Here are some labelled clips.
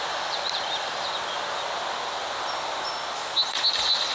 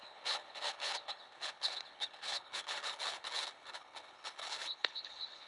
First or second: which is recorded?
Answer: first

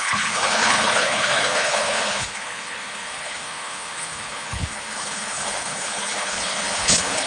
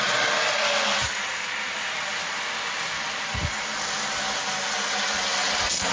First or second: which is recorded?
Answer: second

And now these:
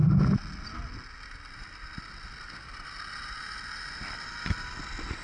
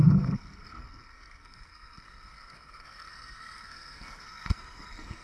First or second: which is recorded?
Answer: first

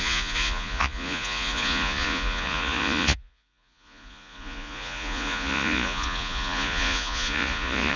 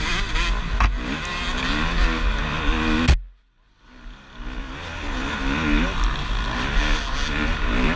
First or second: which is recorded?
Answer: second